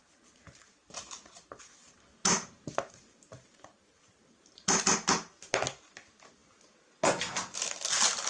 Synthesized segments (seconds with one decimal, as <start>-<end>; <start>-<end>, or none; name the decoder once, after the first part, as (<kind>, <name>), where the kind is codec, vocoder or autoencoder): 0.0-4.8 (vocoder, BigVGAN v2)